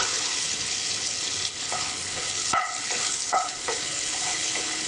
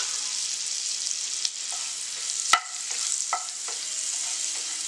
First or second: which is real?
second